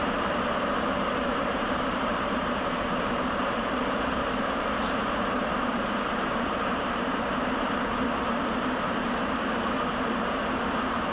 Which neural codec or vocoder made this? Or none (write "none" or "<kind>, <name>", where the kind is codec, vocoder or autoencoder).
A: vocoder, BigVGAN v2